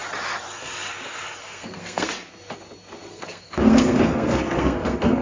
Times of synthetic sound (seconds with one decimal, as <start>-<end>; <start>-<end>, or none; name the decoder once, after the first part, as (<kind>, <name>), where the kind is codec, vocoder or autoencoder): 1.4-2.1 (codec, SNAC); 3.1-5.2